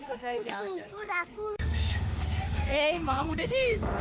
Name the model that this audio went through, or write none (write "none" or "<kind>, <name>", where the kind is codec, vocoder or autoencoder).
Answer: autoencoder, DAC-VAE